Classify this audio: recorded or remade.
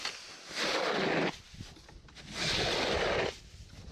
recorded